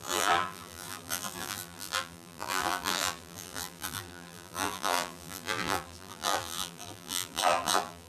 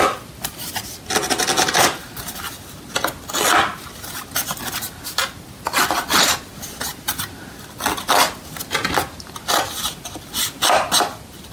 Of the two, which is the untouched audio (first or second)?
second